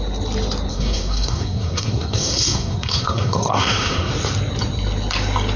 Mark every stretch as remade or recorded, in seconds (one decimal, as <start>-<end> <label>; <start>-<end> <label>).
0.0-0.7 recorded; 0.7-4.1 remade; 4.1-5.6 recorded